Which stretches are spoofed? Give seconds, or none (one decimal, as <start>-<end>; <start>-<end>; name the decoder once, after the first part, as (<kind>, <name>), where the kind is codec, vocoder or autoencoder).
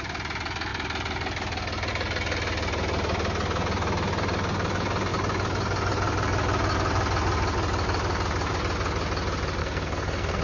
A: 9.6-10.4 (codec, SNAC)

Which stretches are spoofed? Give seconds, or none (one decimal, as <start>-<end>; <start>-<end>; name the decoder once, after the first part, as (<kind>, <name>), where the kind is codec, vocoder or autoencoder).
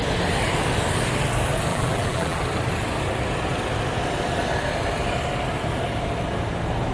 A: 1.7-2.4 (vocoder, BigVGAN v2)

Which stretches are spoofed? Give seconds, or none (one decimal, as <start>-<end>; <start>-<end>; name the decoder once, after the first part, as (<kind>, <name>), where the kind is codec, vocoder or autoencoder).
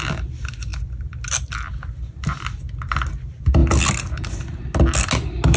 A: none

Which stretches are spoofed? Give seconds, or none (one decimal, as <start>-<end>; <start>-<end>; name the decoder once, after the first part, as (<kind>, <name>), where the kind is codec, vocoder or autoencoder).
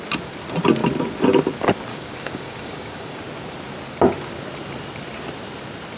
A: 1.9-3.2 (codec, DAC)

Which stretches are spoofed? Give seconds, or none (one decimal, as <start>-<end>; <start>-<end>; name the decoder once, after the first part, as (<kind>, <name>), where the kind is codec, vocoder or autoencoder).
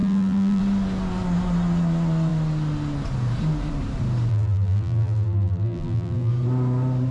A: 0.0-0.6 (vocoder, BigVGAN v2); 4.3-6.3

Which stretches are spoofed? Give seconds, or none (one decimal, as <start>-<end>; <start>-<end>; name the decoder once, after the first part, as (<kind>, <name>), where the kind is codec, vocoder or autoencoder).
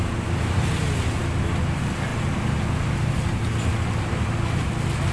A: 0.0-0.7 (vocoder, BigVGAN v2)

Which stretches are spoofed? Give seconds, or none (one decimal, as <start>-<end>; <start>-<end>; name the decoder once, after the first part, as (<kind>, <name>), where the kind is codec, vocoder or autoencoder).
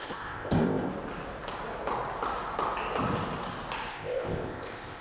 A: 0.0-0.9 (codec, ZipCodec); 3.9-5.0